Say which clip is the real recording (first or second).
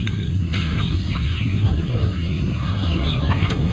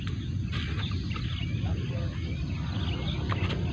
second